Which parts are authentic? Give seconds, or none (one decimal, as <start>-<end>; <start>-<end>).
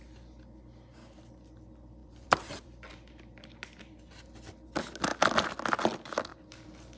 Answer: 0.0-2.0; 2.9-7.0